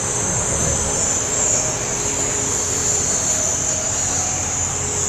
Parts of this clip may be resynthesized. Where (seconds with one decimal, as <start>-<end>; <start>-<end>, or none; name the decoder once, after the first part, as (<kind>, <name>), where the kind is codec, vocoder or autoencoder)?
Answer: 2.8-4.6 (vocoder, BigVGAN v2)